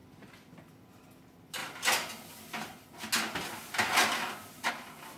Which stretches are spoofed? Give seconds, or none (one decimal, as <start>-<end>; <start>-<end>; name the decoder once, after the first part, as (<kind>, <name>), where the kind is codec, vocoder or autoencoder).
0.0-1.6 (vocoder, BigVGAN v2); 4.7-5.2